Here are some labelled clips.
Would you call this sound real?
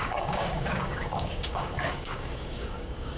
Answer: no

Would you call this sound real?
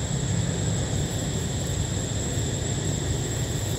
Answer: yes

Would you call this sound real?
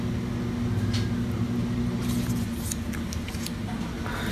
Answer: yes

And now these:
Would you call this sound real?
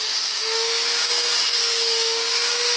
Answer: no